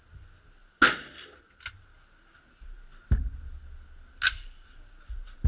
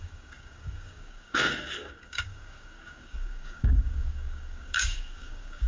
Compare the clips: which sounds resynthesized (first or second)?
second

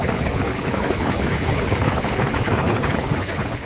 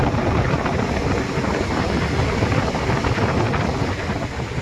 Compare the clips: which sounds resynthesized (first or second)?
first